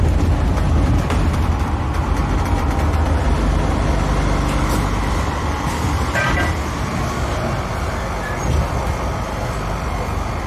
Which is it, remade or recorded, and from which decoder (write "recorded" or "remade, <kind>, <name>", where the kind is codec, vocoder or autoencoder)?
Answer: recorded